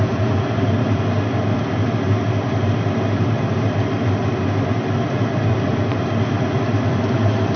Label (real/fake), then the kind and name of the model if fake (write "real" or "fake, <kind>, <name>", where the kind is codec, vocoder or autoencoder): real